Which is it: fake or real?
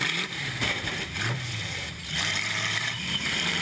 fake